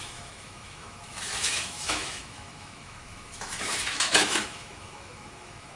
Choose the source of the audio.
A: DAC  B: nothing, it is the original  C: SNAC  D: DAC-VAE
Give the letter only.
D